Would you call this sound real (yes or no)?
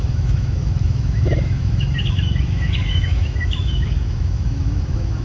no